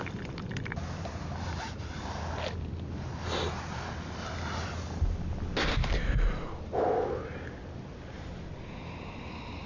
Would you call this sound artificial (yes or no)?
no